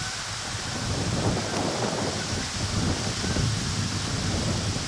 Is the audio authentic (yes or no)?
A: yes